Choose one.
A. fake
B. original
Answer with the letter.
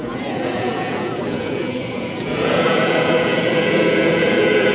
A